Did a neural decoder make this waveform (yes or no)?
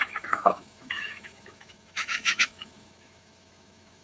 yes